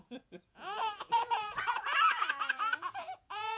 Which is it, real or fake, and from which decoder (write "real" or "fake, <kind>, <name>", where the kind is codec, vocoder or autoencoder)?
fake, vocoder, Vocos